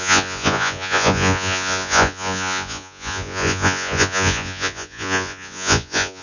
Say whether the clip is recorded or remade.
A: remade